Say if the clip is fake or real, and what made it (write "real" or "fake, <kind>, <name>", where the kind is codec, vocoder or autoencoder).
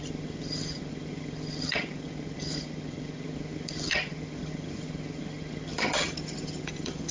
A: fake, vocoder, HiFi-GAN